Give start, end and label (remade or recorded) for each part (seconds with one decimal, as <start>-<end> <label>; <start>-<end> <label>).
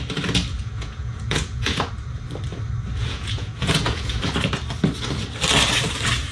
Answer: 0.0-0.5 recorded; 0.5-1.9 remade; 1.9-3.0 recorded; 3.0-4.2 remade; 4.2-6.3 recorded